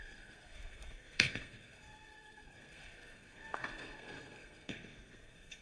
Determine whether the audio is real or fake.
fake